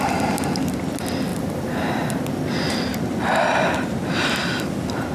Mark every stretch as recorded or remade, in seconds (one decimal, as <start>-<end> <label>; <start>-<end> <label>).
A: 0.0-5.1 recorded